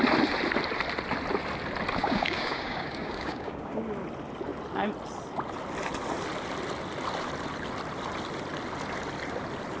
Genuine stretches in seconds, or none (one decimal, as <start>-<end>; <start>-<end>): 0.0-2.0; 3.8-9.8

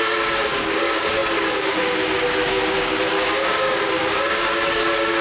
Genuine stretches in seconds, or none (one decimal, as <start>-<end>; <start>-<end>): none